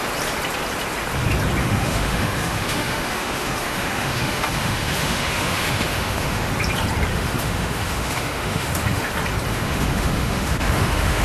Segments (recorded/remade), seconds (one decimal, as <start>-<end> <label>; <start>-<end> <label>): 0.0-1.6 recorded; 1.6-6.5 remade; 6.5-7.1 recorded; 7.1-9.1 remade; 9.1-9.5 recorded; 9.5-11.2 remade